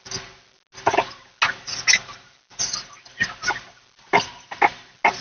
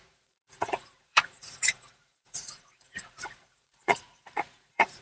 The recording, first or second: first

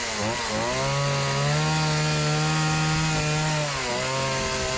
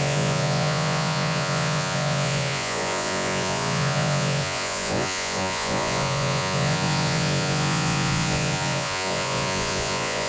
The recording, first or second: first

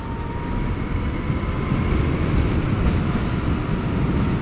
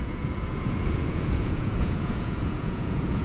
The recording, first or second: first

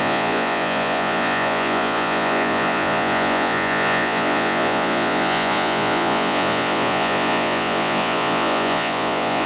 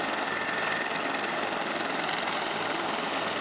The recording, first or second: second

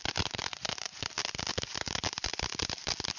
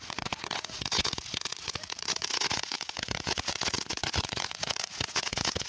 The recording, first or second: first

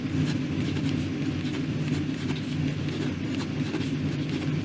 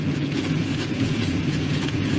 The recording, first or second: first